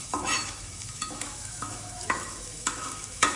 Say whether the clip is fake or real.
fake